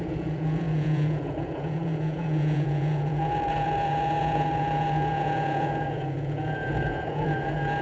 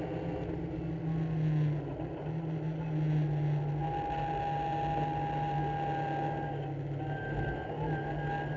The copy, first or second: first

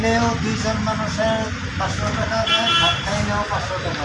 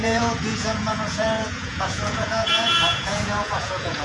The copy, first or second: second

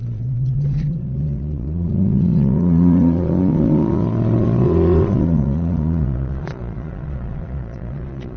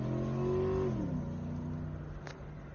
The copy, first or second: first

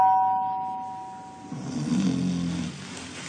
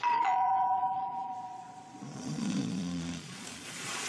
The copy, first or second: second